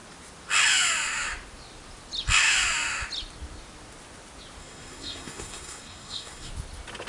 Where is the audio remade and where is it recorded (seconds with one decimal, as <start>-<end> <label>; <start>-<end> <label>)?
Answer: 0.0-4.6 recorded; 4.6-6.5 remade; 6.5-7.1 recorded